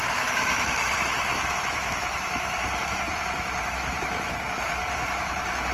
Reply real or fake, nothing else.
fake